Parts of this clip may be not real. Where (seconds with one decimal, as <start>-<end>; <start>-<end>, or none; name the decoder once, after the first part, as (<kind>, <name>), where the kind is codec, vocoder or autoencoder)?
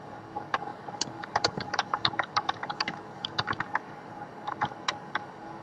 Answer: 0.0-5.6 (codec, DAC)